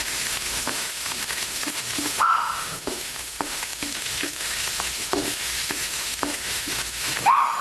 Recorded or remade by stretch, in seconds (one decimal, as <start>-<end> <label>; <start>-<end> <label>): 0.0-7.6 remade